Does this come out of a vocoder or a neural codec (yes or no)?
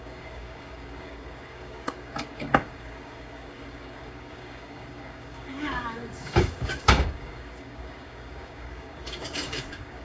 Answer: yes